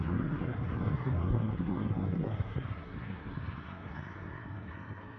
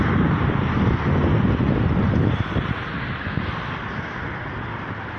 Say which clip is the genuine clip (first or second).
second